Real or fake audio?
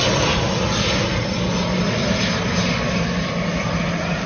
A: real